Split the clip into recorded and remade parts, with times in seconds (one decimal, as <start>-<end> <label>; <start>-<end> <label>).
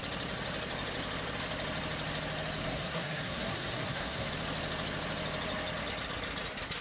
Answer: 0.0-2.6 recorded; 2.6-4.3 remade; 4.3-6.8 recorded